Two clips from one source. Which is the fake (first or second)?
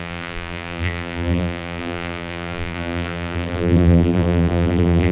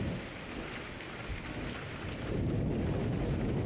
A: first